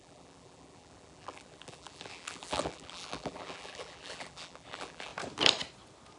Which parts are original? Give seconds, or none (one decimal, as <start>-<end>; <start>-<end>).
5.1-6.2